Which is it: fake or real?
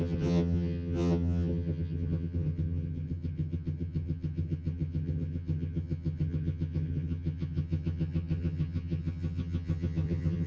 fake